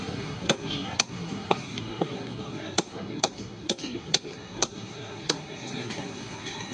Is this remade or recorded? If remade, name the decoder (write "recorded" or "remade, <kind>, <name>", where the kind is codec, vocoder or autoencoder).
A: remade, codec, SNAC